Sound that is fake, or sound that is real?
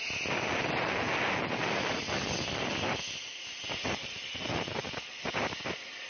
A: real